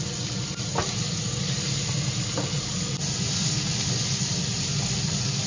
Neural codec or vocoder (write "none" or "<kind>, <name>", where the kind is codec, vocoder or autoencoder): none